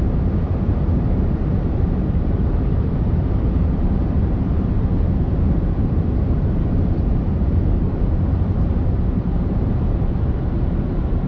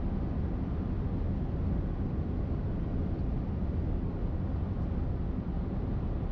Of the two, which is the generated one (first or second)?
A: first